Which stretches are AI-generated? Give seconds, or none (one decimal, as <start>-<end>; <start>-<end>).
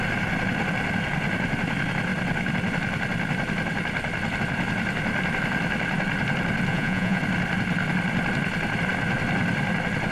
6.7-7.2